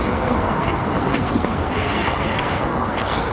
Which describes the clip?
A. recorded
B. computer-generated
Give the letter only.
B